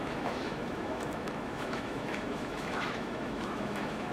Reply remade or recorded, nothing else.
remade